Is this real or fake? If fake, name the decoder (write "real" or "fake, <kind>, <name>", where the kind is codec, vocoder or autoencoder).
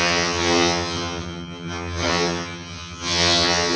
fake, vocoder, HiFi-GAN